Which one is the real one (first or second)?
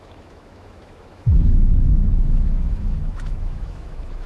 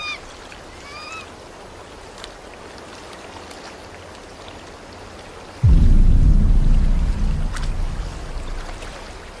second